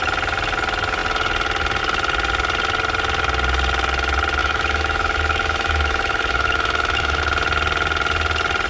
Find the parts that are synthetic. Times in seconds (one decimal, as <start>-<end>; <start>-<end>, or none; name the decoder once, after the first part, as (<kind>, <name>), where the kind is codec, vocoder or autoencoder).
4.4-7.2 (autoencoder, DAC-VAE)